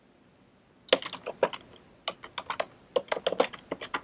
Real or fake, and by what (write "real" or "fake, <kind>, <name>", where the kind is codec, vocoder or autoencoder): real